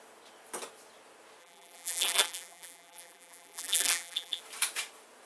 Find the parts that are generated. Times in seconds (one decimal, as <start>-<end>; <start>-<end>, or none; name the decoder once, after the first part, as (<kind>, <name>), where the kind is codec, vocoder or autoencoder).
1.4-4.4 (vocoder, BigVGAN v2)